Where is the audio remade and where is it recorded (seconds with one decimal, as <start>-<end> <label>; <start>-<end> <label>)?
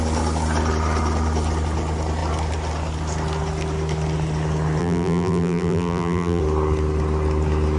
0.0-4.8 recorded; 4.8-6.4 remade; 6.4-7.8 recorded